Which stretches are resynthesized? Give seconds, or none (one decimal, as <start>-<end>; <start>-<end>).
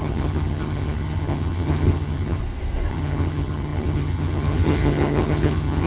0.0-2.4; 2.9-5.9